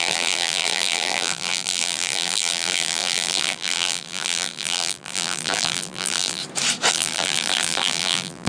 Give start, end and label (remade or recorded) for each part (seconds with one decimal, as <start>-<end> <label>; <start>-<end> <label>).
0.0-6.4 remade; 6.4-6.9 recorded; 6.9-8.5 remade